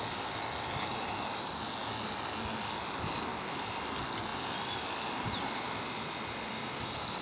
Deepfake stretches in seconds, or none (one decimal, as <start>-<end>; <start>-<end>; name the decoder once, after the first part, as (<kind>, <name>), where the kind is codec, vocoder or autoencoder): 0.9-1.5 (vocoder, BigVGAN v2); 3.3-3.8; 4.3-7.2